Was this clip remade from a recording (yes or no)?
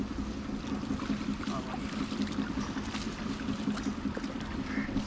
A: no